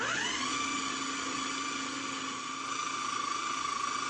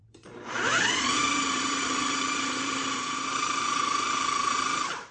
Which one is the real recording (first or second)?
first